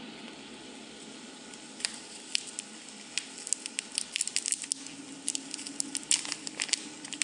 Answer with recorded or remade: recorded